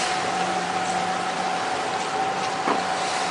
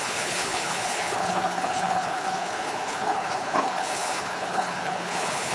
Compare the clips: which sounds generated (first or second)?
second